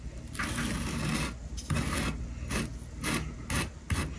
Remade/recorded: recorded